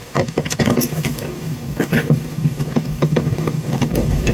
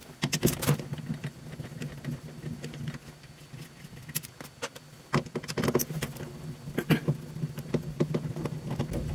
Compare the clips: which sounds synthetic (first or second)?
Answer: first